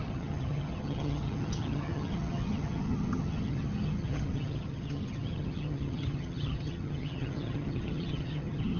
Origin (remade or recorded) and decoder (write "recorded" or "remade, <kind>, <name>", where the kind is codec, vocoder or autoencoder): remade, vocoder, HiFi-GAN